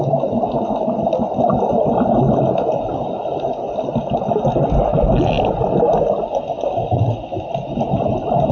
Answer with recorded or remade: recorded